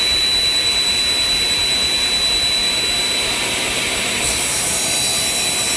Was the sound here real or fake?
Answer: real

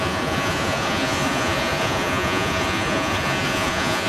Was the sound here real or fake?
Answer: fake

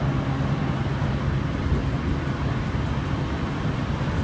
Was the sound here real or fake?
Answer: real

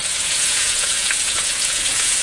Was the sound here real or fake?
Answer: fake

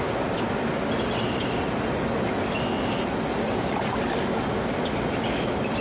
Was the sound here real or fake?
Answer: real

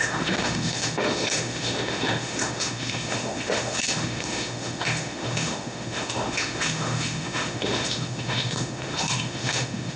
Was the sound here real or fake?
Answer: fake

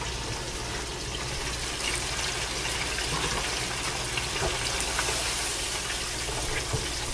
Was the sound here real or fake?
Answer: real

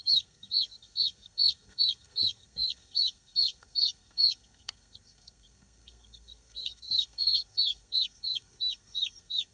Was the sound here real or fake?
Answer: fake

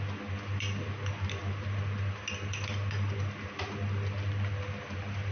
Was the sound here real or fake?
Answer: real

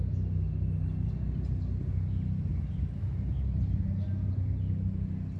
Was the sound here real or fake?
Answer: real